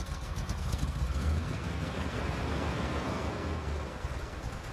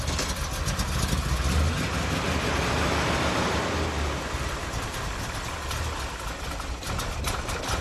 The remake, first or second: first